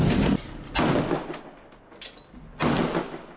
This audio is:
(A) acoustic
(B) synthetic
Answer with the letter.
A